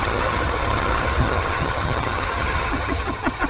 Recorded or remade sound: remade